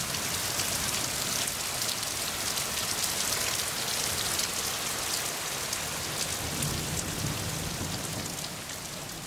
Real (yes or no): yes